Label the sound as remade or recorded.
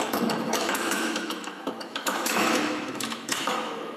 remade